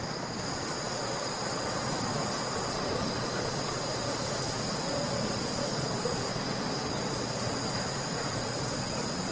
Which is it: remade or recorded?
remade